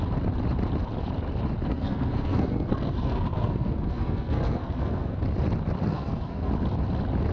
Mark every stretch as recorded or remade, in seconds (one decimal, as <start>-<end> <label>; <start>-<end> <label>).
0.0-1.7 recorded; 1.7-5.2 remade; 5.2-5.9 recorded; 5.9-6.5 remade; 6.5-7.3 recorded